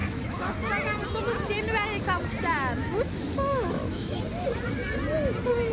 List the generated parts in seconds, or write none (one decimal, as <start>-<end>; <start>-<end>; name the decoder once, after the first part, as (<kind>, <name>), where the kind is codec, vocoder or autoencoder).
0.0-0.7 (autoencoder, DAC-VAE); 3.2-4.2